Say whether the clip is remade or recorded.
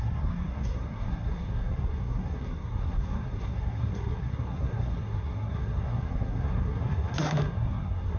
remade